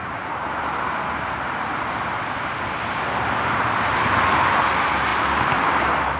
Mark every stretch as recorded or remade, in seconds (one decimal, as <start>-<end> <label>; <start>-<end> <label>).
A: 0.0-3.7 remade; 3.7-5.1 recorded; 5.1-6.2 remade